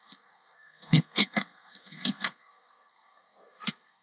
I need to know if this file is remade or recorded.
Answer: remade